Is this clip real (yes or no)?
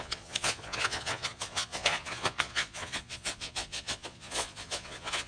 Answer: no